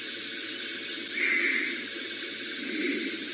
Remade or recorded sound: recorded